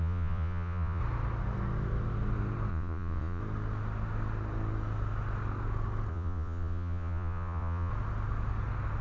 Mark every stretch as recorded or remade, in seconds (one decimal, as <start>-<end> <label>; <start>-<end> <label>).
0.0-1.0 remade; 1.0-2.7 recorded; 2.7-3.4 remade; 3.4-6.1 recorded; 6.1-7.9 remade; 7.9-9.0 recorded